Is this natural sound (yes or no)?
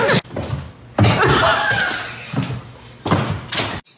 yes